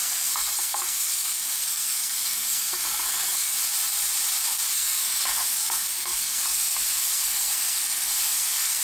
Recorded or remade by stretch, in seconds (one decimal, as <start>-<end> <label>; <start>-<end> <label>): 0.0-3.5 remade; 3.5-4.7 recorded; 4.7-8.8 remade